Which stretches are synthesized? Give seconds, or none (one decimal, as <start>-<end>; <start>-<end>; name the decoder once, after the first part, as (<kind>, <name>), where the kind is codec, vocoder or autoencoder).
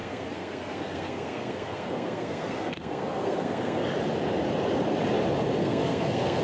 0.0-3.8 (codec, SNAC); 5.6-6.4